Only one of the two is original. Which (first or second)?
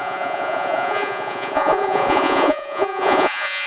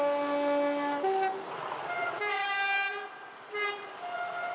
second